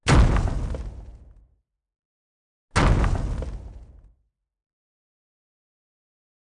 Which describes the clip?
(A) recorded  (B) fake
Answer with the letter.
A